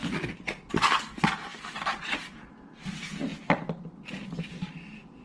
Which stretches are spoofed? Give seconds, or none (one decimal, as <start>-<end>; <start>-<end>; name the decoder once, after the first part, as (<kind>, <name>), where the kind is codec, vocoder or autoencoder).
none